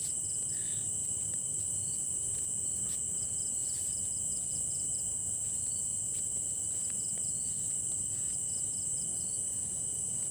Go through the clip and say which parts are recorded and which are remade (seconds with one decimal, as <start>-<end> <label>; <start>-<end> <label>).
0.0-1.0 recorded; 1.0-1.6 remade; 1.6-10.3 recorded